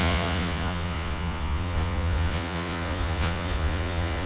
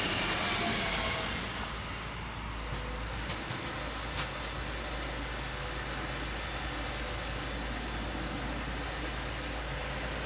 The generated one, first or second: first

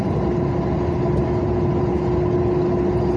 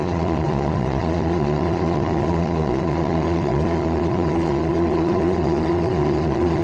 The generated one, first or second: second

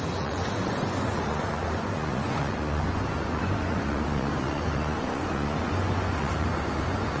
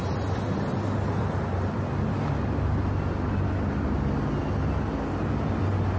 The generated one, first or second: first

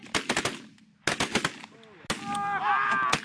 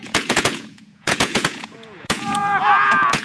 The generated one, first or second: second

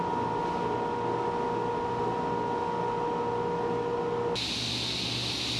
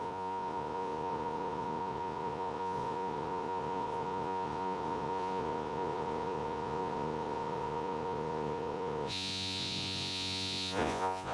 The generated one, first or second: second